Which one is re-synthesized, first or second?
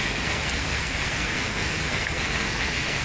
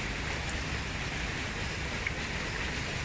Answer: first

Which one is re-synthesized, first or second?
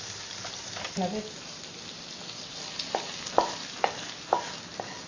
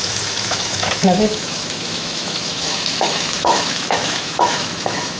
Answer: second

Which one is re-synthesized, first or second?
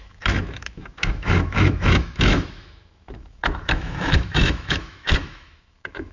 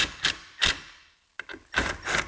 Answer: first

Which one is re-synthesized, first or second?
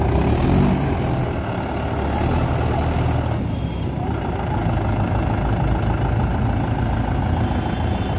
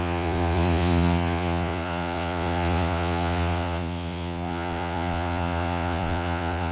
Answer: second